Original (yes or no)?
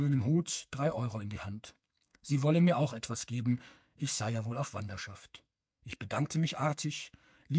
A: no